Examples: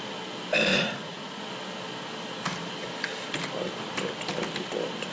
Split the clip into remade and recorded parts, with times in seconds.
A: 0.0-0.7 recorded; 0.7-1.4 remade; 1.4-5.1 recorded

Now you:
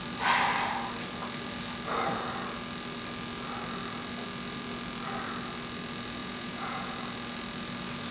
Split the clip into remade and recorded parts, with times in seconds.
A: 0.0-6.2 recorded; 6.2-6.9 remade; 6.9-8.1 recorded

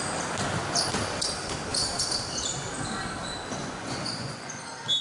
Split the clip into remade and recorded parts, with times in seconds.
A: 0.0-3.6 recorded; 3.6-4.6 remade; 4.6-5.0 recorded

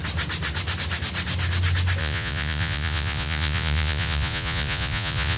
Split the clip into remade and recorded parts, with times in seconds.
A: 0.0-2.0 recorded; 2.0-5.4 remade